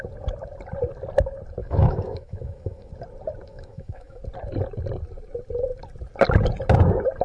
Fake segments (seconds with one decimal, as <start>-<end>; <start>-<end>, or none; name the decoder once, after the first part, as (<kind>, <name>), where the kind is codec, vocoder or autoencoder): 1.6-2.9 (autoencoder, DAC-VAE); 3.5-4.2